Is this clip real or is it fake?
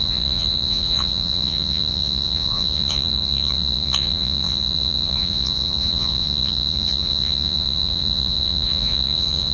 fake